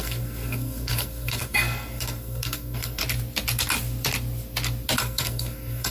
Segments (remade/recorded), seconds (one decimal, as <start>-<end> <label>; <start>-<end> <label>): 0.0-3.0 remade; 3.0-5.0 recorded; 5.0-5.9 remade